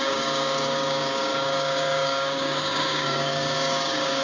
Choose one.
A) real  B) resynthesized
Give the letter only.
B